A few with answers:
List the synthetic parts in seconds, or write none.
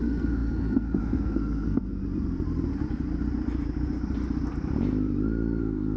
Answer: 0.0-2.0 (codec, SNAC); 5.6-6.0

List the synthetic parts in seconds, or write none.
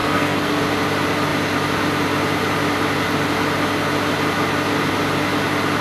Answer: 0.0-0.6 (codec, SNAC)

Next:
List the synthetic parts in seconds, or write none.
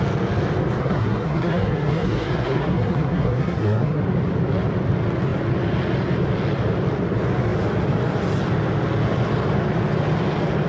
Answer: 0.8-4.0 (codec, SNAC)